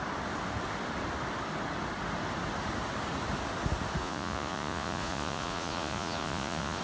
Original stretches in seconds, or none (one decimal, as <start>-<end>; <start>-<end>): 0.0-4.0